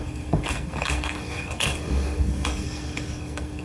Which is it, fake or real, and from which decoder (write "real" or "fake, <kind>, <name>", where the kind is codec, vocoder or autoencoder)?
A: fake, codec, SNAC